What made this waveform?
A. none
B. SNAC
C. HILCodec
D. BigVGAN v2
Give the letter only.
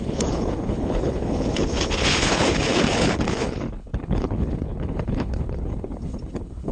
C